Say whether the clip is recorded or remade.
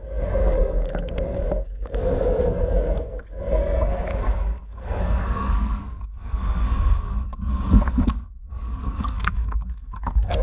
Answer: remade